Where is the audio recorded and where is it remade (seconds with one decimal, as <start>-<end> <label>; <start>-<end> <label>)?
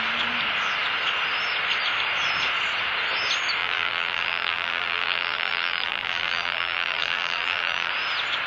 0.0-3.6 recorded; 3.6-7.9 remade; 7.9-8.5 recorded